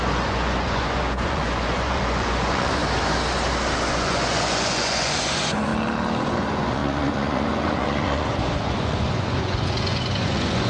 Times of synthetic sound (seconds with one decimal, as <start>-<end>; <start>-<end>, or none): 0.0-2.8; 3.9-5.7; 6.2-10.7